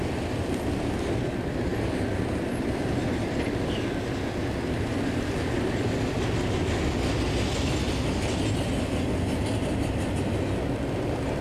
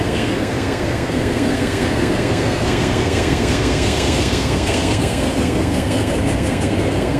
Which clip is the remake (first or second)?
second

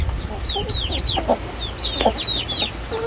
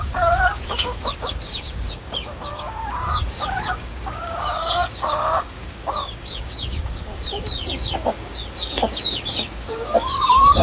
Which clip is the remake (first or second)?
second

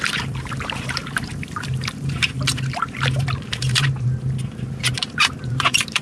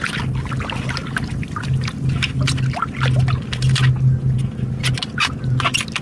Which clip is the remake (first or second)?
first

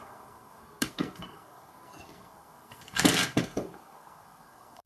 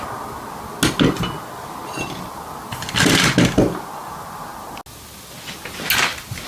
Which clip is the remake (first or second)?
first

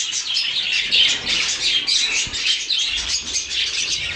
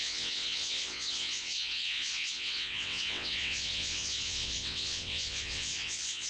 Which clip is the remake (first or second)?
second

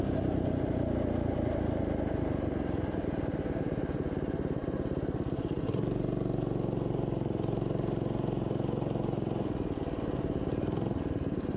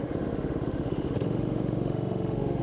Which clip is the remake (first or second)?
second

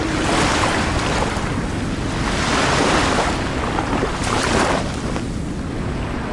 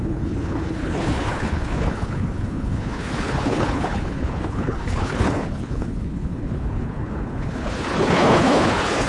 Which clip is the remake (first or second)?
second